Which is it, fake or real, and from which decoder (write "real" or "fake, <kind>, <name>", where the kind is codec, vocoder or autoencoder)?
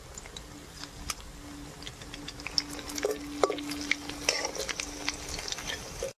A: real